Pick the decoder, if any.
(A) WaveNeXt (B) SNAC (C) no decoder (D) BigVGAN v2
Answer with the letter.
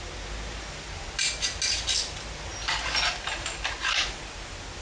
C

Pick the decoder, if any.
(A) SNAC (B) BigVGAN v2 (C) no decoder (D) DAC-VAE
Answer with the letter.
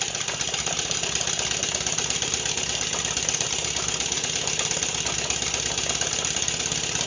C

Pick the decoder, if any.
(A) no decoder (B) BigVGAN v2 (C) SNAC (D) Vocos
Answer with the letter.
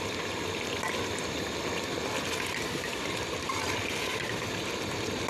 A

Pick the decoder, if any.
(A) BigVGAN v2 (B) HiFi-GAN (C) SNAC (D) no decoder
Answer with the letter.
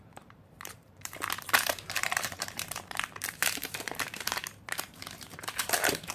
A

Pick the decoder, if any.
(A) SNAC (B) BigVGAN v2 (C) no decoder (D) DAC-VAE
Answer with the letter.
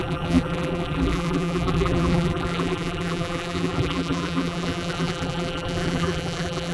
B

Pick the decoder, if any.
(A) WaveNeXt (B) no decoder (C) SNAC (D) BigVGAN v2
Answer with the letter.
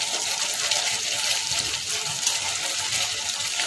B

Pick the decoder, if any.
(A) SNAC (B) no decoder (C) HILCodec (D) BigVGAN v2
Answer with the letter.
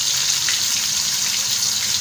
B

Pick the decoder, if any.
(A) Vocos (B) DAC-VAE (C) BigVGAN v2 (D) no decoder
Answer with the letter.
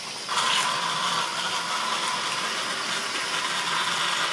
D